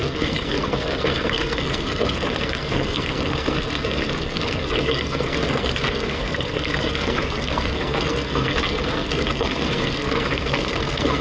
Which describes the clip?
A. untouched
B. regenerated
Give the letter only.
B